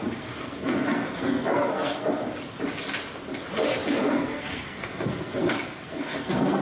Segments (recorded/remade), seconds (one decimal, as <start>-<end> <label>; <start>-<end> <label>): 0.0-2.2 remade; 2.2-3.9 recorded; 3.9-6.6 remade

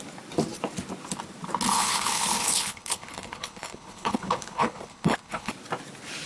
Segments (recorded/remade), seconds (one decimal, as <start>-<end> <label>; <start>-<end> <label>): 0.0-1.7 recorded; 1.7-5.5 remade; 5.5-6.3 recorded

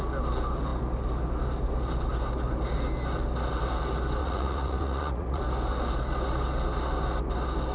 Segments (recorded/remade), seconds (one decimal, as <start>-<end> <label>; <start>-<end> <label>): 0.0-4.2 recorded; 4.2-5.4 remade; 5.4-7.7 recorded

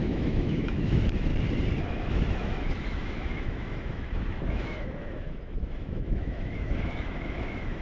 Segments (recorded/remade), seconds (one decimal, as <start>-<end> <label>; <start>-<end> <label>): 0.0-1.3 remade; 1.3-1.9 recorded; 1.9-7.8 remade

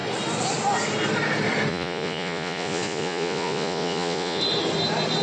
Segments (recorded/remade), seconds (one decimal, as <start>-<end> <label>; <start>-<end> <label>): 0.0-1.7 recorded; 1.7-4.4 remade; 4.4-5.2 recorded

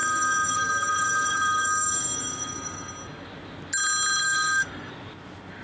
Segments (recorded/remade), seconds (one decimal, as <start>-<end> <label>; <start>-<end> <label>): 0.0-2.9 remade; 2.9-4.2 recorded; 4.2-4.9 remade; 4.9-5.6 recorded

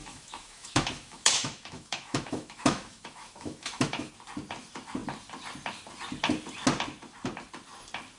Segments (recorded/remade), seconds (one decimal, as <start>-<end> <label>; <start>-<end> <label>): 0.0-4.1 remade; 4.1-8.2 recorded